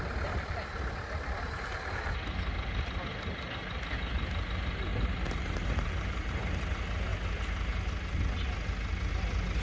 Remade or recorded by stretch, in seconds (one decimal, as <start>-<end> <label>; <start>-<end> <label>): 0.0-4.9 recorded; 4.9-6.3 remade; 6.3-9.6 recorded